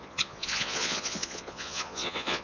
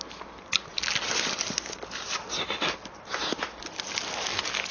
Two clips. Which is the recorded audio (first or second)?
second